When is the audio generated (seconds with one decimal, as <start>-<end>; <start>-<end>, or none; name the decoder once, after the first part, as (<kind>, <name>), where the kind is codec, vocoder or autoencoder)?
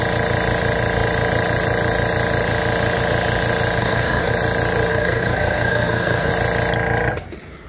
3.8-4.3 (codec, SNAC); 4.9-6.3